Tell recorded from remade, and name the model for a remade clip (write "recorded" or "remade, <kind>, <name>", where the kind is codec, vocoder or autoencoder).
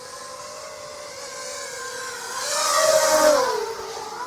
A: recorded